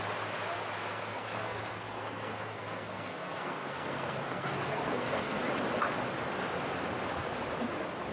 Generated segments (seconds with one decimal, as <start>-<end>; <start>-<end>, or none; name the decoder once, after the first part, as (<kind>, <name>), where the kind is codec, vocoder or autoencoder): 0.8-5.4 (codec, SNAC)